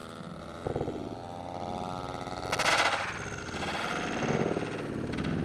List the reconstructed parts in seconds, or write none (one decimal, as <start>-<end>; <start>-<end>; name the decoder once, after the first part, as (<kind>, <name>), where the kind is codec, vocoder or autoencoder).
none